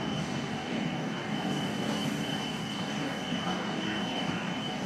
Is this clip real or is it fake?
fake